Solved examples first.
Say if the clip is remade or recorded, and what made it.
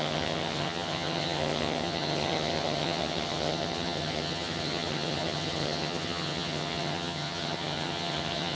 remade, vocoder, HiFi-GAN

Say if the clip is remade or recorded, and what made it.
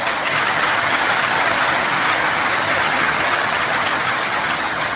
remade, vocoder, HiFi-GAN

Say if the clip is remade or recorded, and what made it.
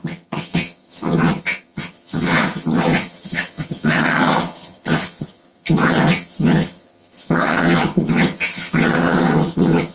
remade, vocoder, HiFi-GAN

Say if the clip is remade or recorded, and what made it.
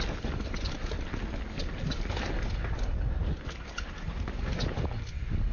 recorded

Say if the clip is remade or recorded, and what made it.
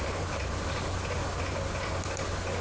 recorded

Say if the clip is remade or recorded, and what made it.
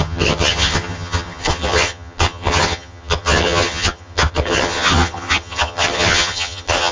remade, vocoder, HiFi-GAN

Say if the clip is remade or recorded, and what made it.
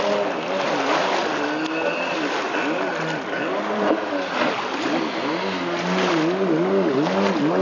recorded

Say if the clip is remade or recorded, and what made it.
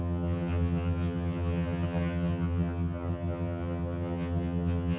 remade, vocoder, HiFi-GAN